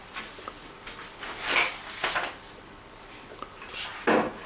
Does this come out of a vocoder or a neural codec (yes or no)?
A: no